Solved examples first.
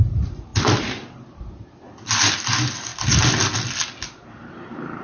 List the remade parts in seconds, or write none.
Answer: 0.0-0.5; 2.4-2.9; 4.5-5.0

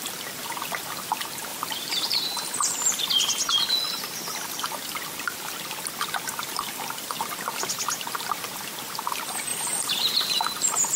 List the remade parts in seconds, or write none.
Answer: 1.5-3.0; 9.5-10.4

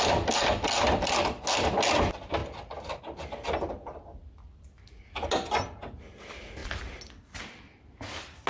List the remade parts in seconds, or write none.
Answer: none

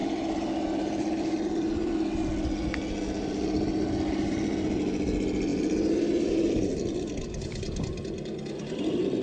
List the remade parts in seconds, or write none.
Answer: 0.0-1.9; 5.5-7.2

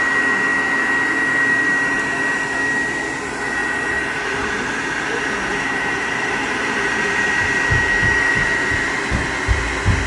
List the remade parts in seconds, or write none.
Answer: 3.6-4.7; 5.5-7.5

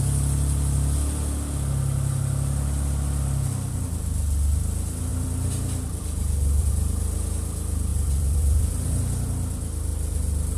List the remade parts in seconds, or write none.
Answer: 5.1-6.7; 7.9-9.0